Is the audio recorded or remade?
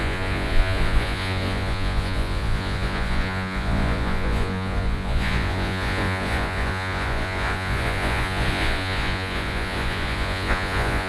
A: remade